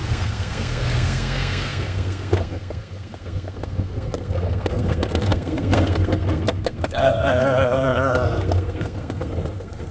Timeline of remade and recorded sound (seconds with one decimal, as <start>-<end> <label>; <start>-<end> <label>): 0.0-9.9 remade